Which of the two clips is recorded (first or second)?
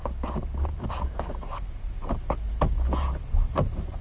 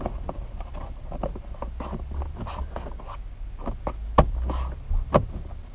second